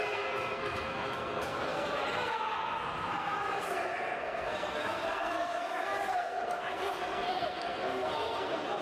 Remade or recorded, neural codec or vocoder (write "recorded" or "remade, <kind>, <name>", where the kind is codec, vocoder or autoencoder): remade, codec, SNAC